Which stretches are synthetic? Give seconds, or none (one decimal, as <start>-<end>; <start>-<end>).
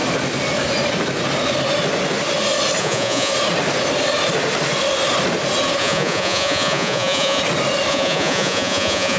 2.8-3.3; 5.8-7.4; 7.9-9.2